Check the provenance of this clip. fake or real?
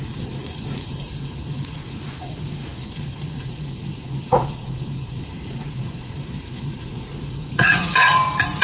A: fake